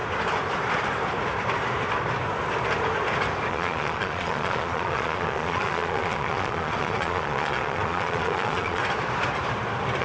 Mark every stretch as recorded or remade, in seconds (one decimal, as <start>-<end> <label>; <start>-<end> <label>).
0.0-3.5 recorded; 3.5-8.8 remade; 8.8-10.0 recorded